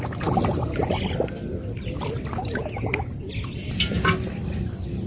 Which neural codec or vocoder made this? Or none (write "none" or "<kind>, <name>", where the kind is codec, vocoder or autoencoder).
none